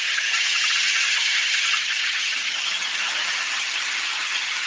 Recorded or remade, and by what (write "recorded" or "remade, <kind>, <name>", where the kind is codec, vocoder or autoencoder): remade, vocoder, HiFi-GAN